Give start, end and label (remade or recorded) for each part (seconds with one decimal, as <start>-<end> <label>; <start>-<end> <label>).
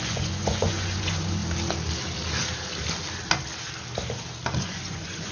0.0-1.4 remade; 1.4-4.6 recorded; 4.6-5.3 remade